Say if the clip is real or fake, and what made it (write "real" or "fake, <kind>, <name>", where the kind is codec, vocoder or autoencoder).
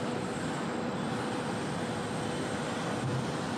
real